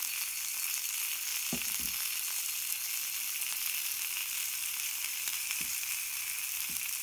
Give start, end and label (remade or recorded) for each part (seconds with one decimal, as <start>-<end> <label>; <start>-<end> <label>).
0.0-4.2 recorded; 4.2-5.9 remade; 5.9-7.0 recorded

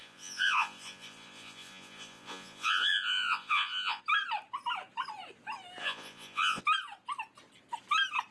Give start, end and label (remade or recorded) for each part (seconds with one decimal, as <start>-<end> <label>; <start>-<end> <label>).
0.0-4.0 remade; 4.0-5.8 recorded; 5.8-6.6 remade; 6.6-8.3 recorded